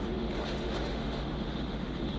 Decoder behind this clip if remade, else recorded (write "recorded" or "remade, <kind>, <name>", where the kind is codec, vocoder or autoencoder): remade, autoencoder, DAC-VAE